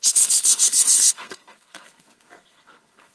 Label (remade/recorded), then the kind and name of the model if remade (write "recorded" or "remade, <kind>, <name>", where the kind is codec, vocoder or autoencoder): remade, codec, SNAC